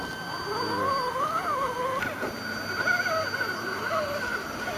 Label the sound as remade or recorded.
recorded